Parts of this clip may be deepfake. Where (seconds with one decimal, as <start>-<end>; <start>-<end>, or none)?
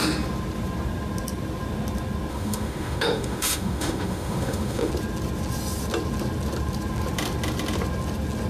2.3-4.9